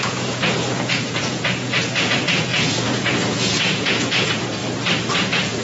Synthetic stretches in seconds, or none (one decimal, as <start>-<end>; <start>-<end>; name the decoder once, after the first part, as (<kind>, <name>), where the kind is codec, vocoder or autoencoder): 0.0-4.6 (vocoder, Vocos); 5.1-5.6